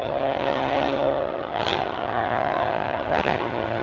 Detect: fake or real fake